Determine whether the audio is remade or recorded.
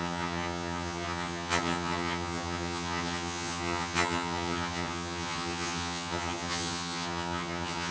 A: remade